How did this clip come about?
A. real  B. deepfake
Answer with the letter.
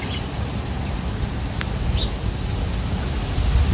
A